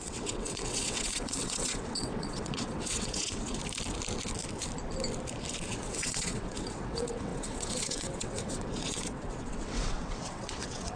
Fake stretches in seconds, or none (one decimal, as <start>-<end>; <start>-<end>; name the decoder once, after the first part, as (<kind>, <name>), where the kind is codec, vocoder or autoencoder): 0.0-3.6 (vocoder, WaveNeXt); 5.7-11.0